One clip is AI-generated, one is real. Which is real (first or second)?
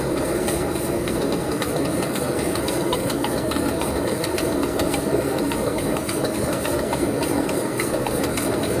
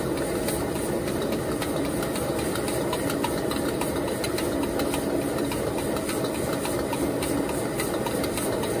second